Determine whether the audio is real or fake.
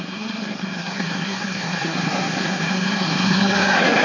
fake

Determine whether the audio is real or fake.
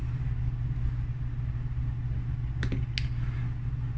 real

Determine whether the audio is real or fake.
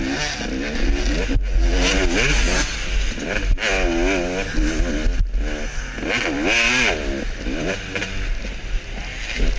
real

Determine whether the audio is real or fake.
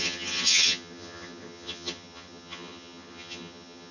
fake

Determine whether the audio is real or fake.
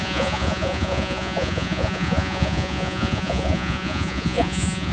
fake